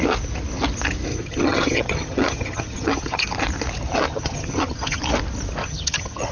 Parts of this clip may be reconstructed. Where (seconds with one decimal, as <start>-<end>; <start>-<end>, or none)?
1.1-3.3; 4.1-5.0; 5.6-6.3